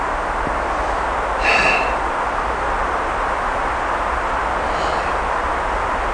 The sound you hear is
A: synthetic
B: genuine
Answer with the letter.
B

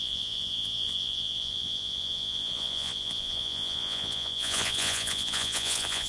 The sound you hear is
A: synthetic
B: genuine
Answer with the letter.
A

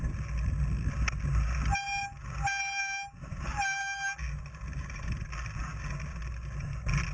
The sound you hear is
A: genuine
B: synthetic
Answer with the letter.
A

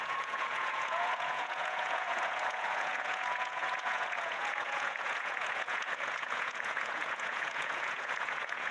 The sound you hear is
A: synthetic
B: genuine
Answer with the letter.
A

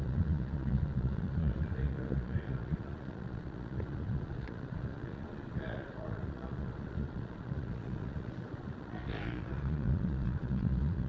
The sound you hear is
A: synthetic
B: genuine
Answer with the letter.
A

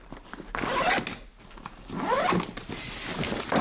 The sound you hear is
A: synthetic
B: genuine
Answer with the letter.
B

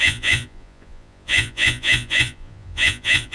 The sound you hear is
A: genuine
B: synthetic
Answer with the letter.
B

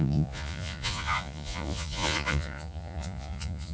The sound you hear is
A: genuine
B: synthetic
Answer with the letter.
B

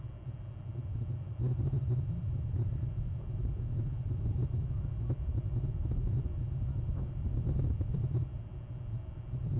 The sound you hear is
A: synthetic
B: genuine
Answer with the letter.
B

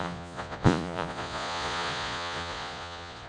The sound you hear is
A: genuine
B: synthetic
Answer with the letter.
B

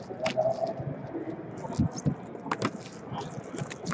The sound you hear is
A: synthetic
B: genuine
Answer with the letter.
B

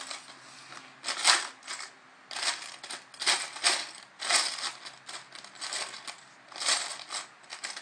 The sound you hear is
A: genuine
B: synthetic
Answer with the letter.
A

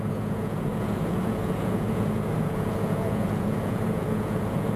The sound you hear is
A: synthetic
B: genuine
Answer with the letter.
A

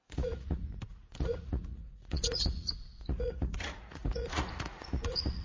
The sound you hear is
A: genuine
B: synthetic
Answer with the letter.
B